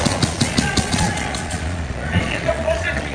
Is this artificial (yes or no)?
yes